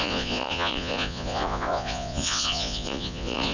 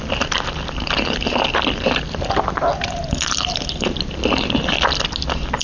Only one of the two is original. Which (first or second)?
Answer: second